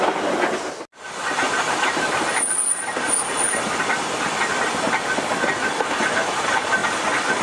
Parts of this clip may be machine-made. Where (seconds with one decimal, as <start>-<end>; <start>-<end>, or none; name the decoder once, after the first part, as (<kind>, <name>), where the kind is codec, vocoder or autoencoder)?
none